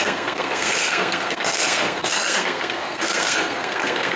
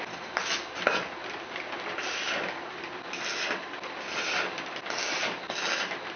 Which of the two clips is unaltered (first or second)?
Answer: second